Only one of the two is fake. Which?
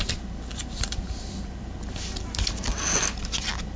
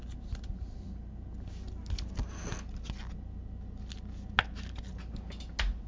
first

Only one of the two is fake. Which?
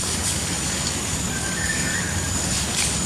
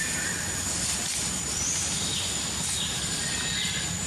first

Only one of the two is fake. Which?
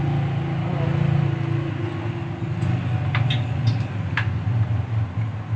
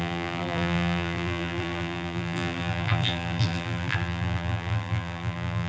second